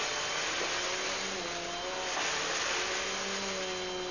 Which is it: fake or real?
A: real